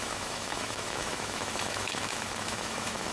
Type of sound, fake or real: fake